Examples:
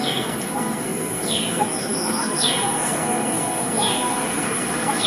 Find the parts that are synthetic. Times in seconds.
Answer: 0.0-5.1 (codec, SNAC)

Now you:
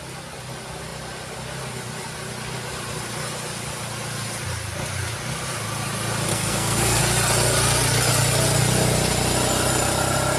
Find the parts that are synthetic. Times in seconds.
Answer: 6.3-7.0 (codec, SNAC)

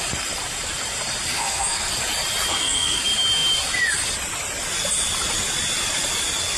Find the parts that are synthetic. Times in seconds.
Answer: 1.3-1.9 (codec, SNAC); 2.5-3.0